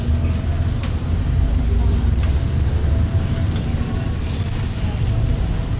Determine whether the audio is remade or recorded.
recorded